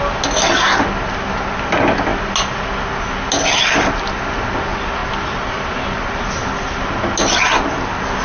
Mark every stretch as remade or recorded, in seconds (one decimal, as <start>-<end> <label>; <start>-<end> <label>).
0.0-8.2 recorded

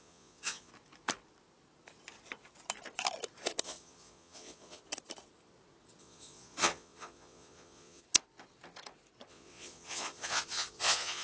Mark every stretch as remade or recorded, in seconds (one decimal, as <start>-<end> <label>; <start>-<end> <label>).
0.0-0.7 remade; 0.7-3.6 recorded; 3.6-4.8 remade; 4.8-6.0 recorded; 6.0-8.0 remade; 8.0-9.3 recorded; 9.3-11.2 remade

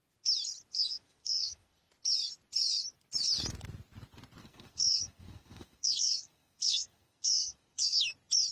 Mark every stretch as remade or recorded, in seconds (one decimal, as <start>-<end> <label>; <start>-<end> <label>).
0.0-0.7 recorded; 0.7-1.9 remade; 1.9-4.4 recorded; 4.4-8.0 remade; 8.0-8.5 recorded

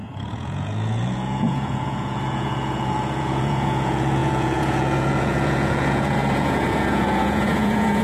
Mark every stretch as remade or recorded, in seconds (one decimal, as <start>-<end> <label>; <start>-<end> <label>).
0.0-8.0 remade

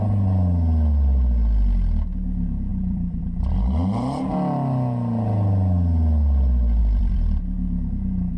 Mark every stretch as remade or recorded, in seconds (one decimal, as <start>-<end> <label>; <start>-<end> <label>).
0.0-2.7 recorded; 2.7-3.2 remade; 3.2-6.8 recorded; 6.8-7.4 remade; 7.4-8.4 recorded